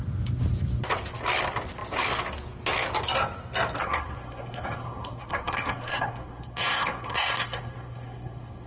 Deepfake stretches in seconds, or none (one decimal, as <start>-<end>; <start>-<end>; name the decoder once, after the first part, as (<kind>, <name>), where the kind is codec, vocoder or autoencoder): 3.8-8.7 (codec, SNAC)

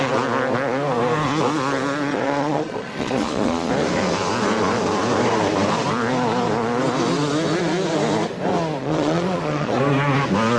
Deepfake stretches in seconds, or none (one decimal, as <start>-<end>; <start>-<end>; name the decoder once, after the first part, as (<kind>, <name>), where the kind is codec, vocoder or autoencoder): 2.1-3.7 (vocoder, Vocos); 8.8-9.8